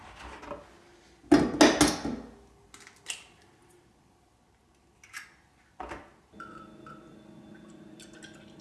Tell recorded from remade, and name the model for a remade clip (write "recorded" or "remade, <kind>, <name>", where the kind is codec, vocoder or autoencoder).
recorded